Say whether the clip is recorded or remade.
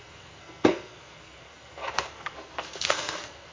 remade